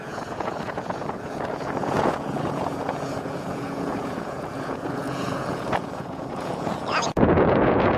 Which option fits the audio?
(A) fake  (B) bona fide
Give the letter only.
A